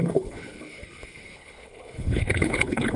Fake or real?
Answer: fake